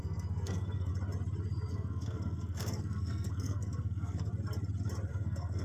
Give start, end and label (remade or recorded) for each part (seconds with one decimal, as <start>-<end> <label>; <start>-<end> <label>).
0.0-0.9 remade; 0.9-1.7 recorded; 1.7-4.3 remade; 4.3-5.1 recorded; 5.1-5.6 remade